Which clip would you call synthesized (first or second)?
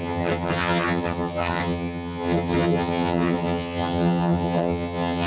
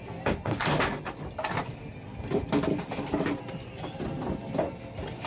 first